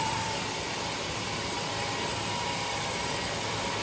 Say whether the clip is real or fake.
fake